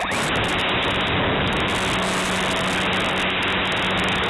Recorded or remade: recorded